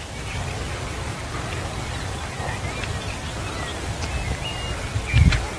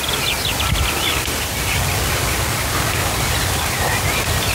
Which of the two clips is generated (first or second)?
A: second